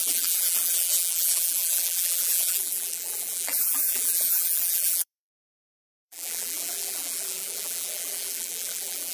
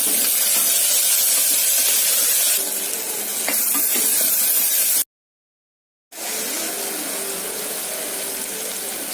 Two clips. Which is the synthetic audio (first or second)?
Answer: first